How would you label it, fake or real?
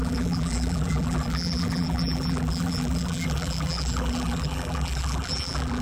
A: fake